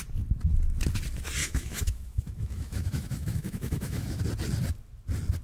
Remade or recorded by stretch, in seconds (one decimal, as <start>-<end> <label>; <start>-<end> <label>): 0.0-1.4 recorded; 1.4-4.2 remade; 4.2-5.4 recorded